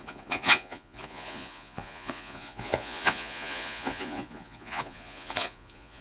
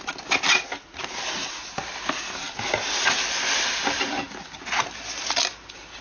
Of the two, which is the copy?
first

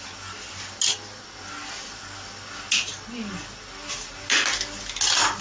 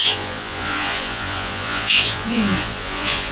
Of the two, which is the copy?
second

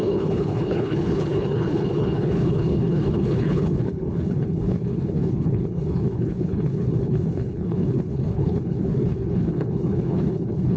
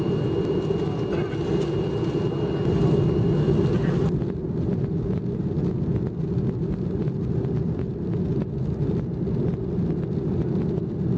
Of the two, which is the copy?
first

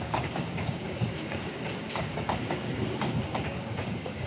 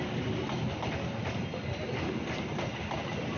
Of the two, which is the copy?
first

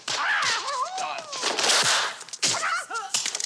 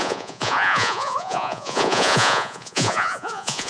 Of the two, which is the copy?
second